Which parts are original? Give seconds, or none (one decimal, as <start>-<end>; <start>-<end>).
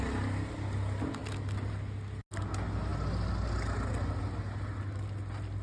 0.0-5.6